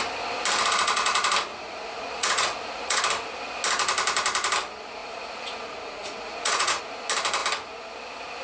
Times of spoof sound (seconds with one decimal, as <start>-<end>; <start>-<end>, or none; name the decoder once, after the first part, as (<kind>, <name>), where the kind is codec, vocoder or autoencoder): 1.5-3.0 (vocoder, Vocos); 5.0-6.8